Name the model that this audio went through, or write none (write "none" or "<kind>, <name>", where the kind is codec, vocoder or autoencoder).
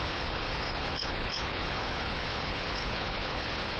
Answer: codec, HILCodec